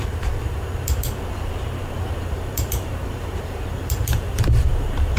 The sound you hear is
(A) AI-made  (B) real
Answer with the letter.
A